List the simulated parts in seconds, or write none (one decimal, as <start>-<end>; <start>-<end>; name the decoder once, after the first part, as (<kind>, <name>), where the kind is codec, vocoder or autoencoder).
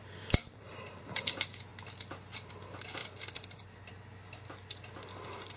0.4-1.1 (vocoder, BigVGAN v2); 3.0-3.9